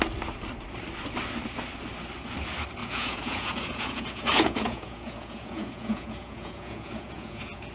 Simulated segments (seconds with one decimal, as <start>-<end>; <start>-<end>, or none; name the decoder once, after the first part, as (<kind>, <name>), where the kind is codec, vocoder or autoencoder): 2.8-7.7 (vocoder, Vocos)